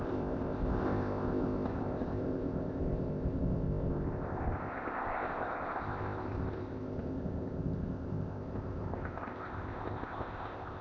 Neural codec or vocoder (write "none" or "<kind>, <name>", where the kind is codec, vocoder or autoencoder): codec, ZipCodec